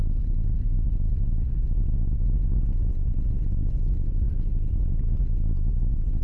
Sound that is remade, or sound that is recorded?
recorded